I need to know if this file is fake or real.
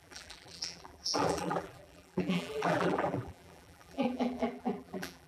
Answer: fake